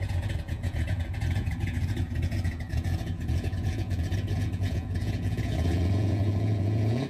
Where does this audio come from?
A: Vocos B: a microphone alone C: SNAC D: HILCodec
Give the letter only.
A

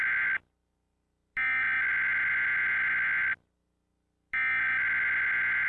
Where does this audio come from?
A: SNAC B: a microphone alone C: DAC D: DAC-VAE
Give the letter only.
B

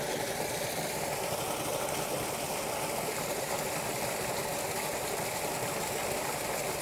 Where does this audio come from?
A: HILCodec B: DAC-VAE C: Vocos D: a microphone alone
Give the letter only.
D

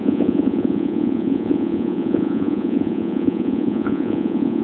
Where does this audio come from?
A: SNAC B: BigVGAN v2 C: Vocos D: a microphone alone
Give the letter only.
C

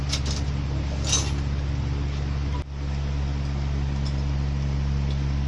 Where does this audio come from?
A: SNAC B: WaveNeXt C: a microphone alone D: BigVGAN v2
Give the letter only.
C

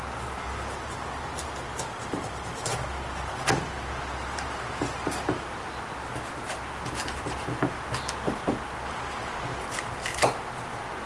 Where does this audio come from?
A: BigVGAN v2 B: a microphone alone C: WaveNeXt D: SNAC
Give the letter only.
B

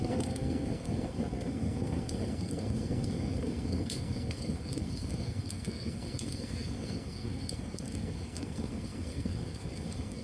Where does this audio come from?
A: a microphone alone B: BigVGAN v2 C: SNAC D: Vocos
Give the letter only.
C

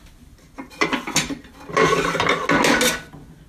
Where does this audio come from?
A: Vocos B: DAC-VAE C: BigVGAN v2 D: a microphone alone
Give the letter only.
D